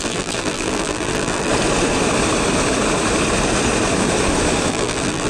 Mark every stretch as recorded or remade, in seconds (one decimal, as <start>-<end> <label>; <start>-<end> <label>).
0.0-1.5 remade; 1.5-4.7 recorded; 4.7-5.3 remade